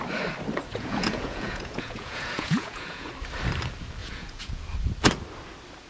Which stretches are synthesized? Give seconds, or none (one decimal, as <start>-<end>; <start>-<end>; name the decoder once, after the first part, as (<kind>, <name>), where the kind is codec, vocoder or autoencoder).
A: 0.7-3.1 (vocoder, Vocos); 4.0-4.6